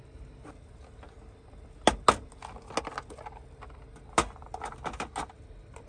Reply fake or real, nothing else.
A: real